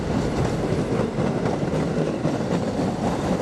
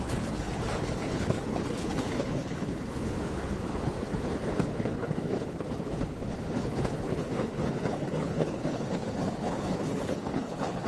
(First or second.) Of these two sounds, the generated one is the second